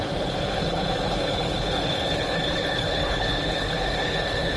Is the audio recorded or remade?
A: remade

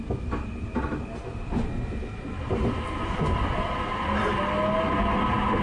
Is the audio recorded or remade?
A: recorded